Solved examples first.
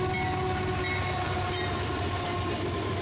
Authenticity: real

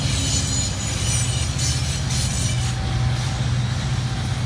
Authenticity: real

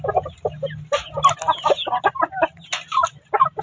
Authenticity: real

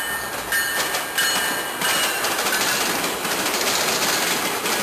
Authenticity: real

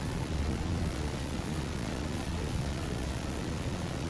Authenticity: fake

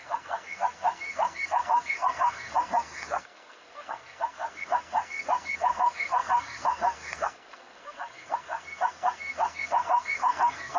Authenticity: fake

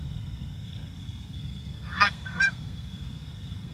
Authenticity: fake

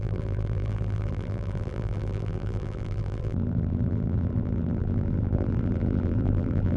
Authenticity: fake